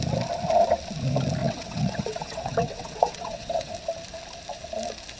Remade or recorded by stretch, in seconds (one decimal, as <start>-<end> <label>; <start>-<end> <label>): 0.0-1.4 recorded; 1.4-3.7 remade; 3.7-5.2 recorded